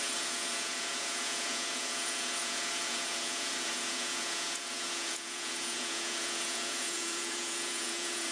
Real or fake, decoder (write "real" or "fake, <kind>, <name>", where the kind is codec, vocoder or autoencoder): fake, vocoder, Vocos